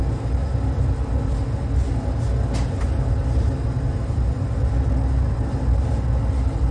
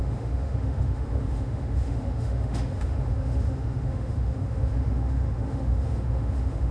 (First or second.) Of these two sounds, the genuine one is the first